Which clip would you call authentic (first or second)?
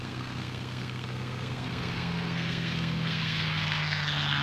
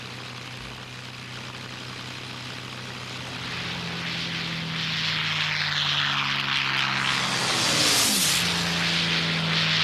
second